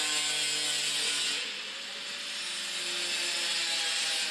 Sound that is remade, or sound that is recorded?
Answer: recorded